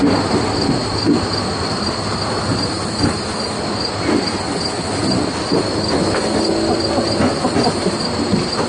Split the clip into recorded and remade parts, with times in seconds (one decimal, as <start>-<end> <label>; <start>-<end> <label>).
0.0-8.7 recorded